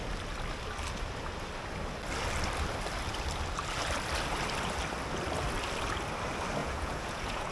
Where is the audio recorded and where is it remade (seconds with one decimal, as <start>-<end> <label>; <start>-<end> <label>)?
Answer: 0.0-6.6 recorded; 6.6-7.5 remade